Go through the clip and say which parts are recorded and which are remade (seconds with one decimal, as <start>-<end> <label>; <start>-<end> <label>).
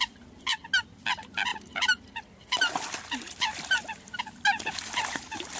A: 0.0-5.6 recorded